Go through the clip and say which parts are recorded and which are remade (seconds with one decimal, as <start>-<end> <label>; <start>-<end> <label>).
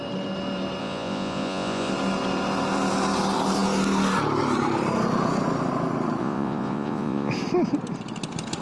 0.0-0.8 recorded; 0.8-1.9 remade; 1.9-6.2 recorded; 6.2-7.3 remade; 7.3-8.6 recorded